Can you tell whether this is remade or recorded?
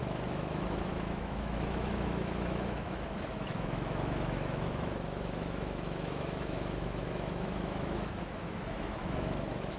remade